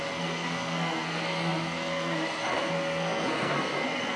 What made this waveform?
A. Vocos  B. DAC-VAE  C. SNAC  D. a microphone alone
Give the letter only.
C